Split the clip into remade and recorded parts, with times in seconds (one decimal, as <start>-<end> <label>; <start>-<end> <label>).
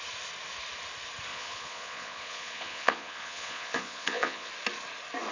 0.0-1.3 recorded; 1.3-4.5 remade; 4.5-5.3 recorded